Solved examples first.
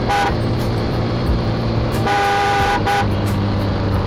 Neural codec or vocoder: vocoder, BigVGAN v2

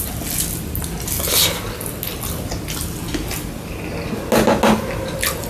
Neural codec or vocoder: none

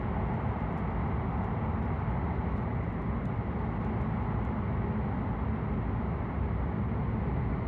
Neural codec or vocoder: none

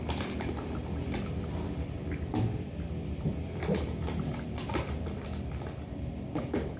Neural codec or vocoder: vocoder, BigVGAN v2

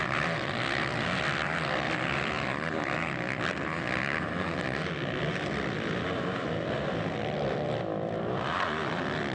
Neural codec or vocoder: vocoder, BigVGAN v2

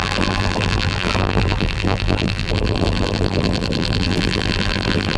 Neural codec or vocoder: vocoder, BigVGAN v2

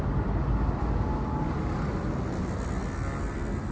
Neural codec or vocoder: none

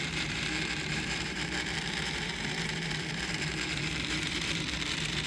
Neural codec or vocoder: vocoder, BigVGAN v2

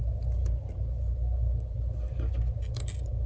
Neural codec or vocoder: none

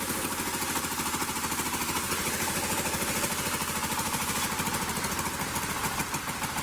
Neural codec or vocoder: vocoder, BigVGAN v2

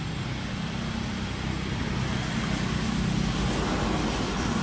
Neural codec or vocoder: none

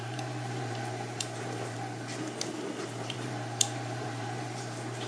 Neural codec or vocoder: vocoder, BigVGAN v2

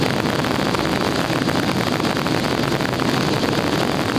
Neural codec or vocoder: none